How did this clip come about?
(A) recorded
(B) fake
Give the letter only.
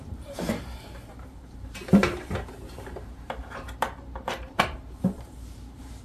B